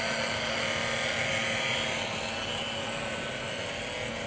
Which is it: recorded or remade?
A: recorded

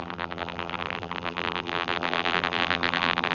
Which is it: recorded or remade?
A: remade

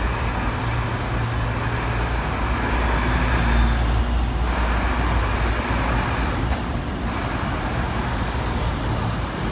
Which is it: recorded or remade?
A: recorded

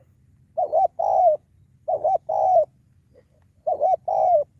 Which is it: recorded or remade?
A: recorded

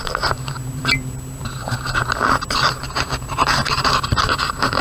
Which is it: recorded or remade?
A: remade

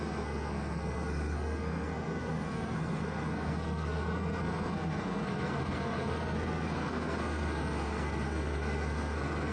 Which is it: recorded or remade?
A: remade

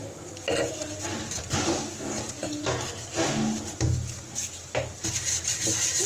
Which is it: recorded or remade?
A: recorded